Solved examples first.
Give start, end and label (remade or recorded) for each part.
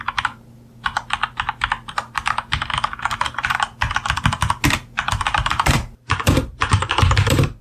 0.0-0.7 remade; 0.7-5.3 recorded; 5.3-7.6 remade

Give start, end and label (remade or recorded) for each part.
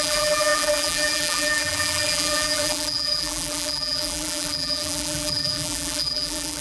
0.0-6.6 remade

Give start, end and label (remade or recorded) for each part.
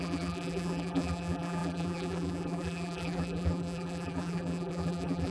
0.0-5.3 remade